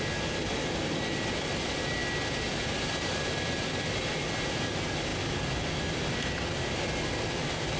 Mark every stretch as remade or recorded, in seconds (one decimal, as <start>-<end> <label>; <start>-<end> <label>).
0.0-7.8 recorded